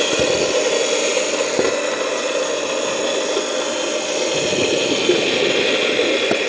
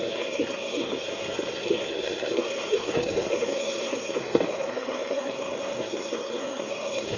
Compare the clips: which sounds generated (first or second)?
second